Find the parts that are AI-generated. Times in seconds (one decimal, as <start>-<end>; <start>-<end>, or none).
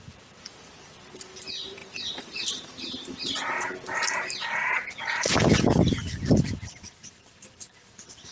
0.0-8.3